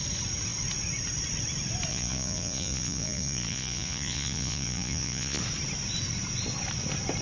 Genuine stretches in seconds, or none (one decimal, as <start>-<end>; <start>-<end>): 0.0-1.9; 5.4-7.2